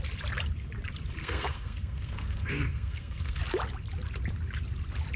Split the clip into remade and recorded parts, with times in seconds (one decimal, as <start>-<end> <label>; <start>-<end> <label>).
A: 0.0-1.2 recorded; 1.2-3.4 remade; 3.4-5.2 recorded